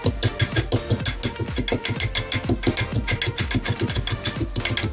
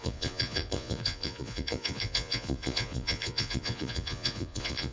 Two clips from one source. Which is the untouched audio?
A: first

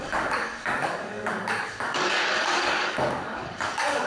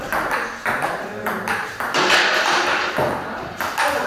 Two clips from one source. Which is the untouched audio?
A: second